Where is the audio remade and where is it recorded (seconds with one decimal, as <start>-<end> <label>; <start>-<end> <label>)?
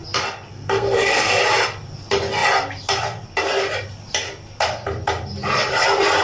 0.0-0.5 recorded; 0.5-1.4 remade; 1.4-6.2 recorded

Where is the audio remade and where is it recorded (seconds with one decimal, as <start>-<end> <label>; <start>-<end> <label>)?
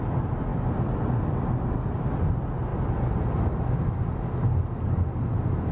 0.0-5.7 recorded